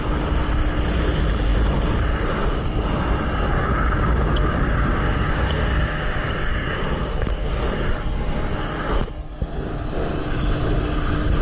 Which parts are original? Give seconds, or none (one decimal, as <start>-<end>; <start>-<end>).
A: 0.0-3.6; 7.5-11.4